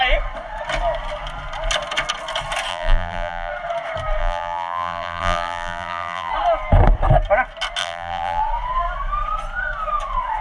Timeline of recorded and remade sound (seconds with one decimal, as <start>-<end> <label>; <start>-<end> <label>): 0.0-2.7 recorded; 2.7-3.5 remade; 3.5-4.2 recorded; 4.2-6.3 remade; 6.3-7.8 recorded; 7.8-8.4 remade; 8.4-10.4 recorded